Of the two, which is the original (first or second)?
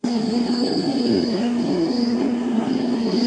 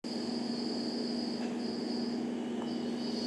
second